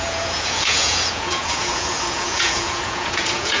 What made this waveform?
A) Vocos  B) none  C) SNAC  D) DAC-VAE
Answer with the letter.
A